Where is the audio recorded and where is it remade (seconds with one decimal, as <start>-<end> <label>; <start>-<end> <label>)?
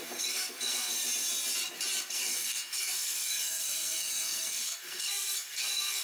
0.0-0.9 remade; 0.9-2.1 recorded; 2.1-6.0 remade